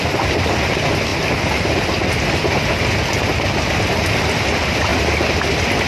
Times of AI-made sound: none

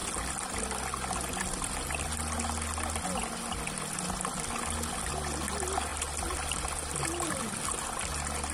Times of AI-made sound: none

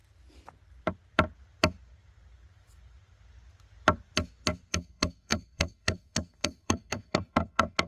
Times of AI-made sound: 4.7-7.9 (codec, SNAC)